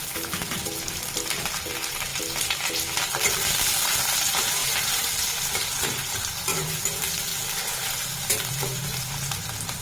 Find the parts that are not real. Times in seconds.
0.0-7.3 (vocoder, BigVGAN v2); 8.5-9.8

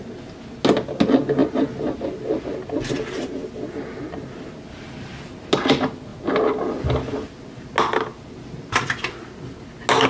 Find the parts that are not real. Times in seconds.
none